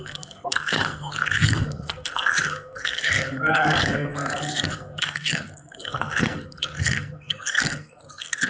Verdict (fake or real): fake